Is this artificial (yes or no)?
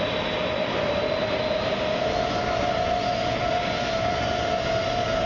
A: no